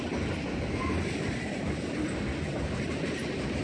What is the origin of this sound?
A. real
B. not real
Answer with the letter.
A